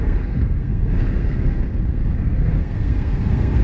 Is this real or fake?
fake